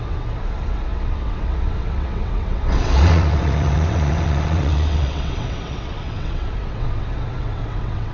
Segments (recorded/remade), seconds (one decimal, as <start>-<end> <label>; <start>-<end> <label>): 0.0-8.1 remade